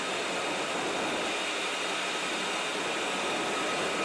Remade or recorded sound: recorded